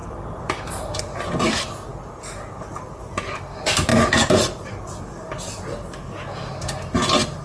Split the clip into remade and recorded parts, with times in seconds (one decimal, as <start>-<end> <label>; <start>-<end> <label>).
0.0-1.0 remade; 1.0-3.9 recorded; 3.9-5.0 remade; 5.0-7.4 recorded